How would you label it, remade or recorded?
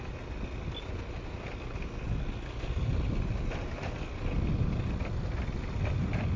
recorded